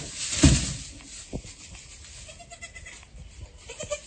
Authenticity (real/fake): real